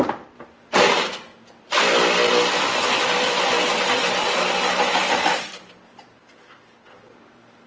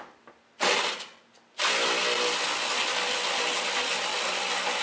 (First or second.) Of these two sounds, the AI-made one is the first